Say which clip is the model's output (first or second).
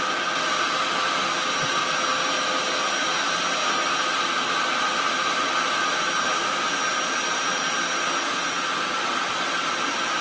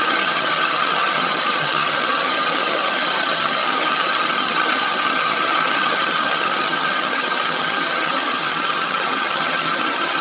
second